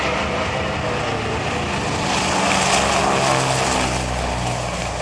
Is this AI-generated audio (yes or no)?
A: no